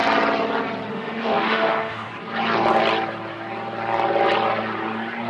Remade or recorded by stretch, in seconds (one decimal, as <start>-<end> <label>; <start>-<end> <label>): 0.0-0.9 recorded; 0.9-2.1 remade; 2.1-5.3 recorded